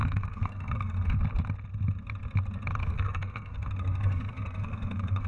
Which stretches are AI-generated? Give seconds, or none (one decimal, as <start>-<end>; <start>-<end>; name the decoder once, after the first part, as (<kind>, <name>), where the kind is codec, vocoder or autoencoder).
0.0-1.2 (codec, SNAC); 2.8-5.3